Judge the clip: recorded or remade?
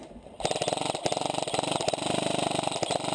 recorded